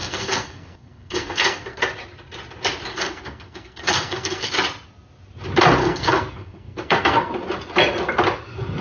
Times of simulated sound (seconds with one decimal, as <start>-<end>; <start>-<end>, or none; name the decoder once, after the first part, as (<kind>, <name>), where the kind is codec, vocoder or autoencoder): 0.0-1.8 (codec, SNAC); 2.9-4.5; 5.8-7.3